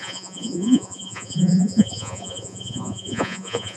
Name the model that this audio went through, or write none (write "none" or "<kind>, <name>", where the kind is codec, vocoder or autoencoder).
vocoder, Vocos